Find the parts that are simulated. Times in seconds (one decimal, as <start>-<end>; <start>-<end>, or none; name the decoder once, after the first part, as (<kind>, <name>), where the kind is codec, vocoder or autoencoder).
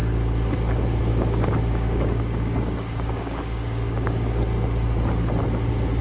1.1-4.4 (codec, DAC)